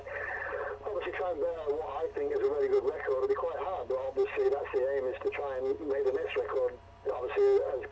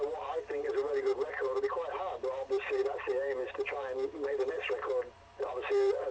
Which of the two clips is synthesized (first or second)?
second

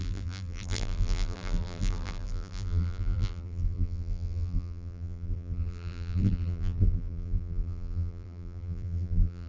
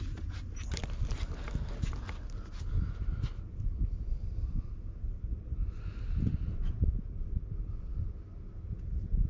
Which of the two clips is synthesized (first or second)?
first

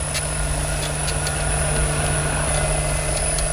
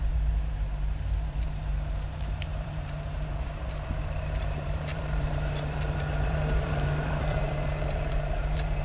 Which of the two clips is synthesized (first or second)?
second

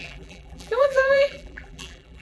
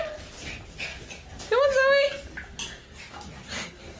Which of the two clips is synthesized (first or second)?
first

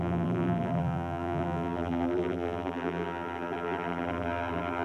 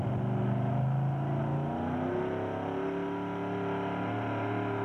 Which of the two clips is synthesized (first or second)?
first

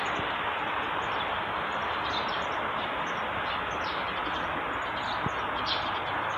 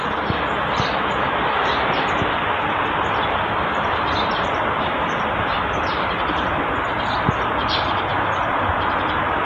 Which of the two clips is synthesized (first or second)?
second